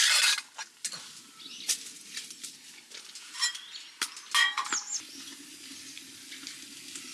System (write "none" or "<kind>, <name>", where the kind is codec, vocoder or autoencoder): none